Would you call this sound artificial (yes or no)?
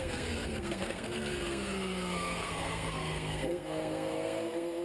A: yes